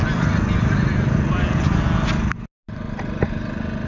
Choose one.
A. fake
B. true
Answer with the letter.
B